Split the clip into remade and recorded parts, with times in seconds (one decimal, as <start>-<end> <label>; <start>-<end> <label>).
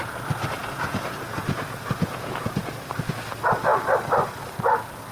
0.0-0.6 recorded; 0.6-2.8 remade; 2.8-5.1 recorded